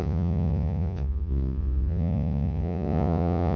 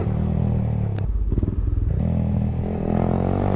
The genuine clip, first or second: second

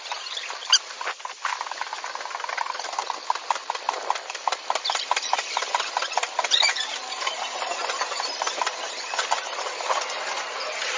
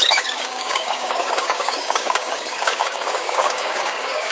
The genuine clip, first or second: first